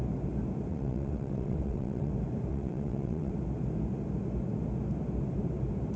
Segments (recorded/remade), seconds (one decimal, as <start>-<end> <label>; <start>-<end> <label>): 0.0-0.7 recorded; 0.7-2.1 remade; 2.1-2.5 recorded; 2.5-3.3 remade; 3.3-6.0 recorded